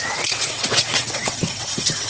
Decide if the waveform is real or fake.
fake